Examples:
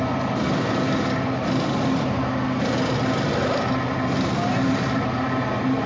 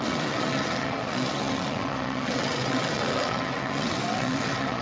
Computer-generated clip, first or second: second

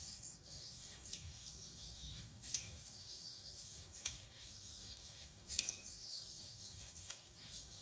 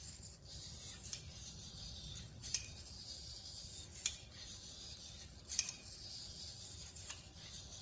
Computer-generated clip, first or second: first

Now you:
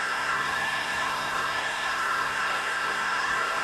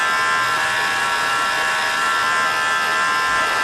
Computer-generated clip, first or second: first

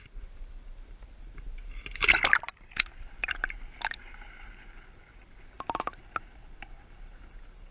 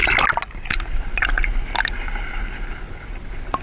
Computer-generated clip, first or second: first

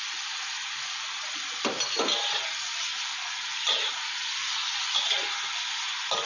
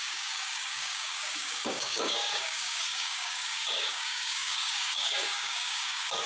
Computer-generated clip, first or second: second